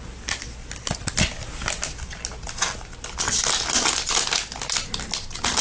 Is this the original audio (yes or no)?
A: yes